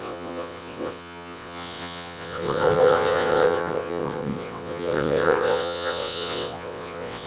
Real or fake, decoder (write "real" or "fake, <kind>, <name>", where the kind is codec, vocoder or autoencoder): fake, vocoder, WaveNeXt